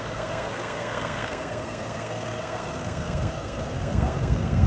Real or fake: fake